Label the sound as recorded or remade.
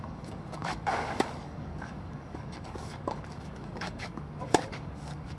remade